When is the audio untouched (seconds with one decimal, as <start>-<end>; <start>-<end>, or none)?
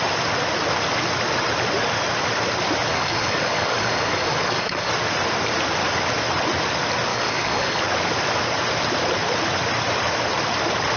0.0-2.9; 4.9-7.1; 7.8-11.0